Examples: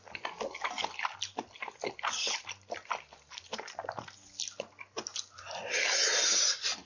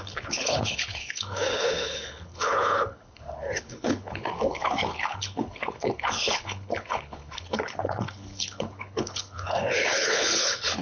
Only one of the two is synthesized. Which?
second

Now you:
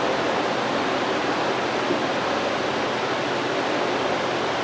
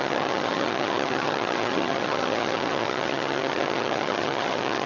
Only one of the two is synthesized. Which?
second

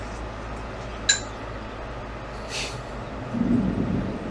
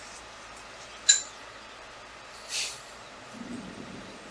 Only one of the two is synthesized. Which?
second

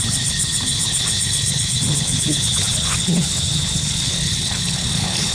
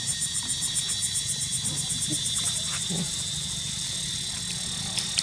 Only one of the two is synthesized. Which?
first